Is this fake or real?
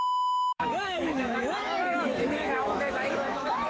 fake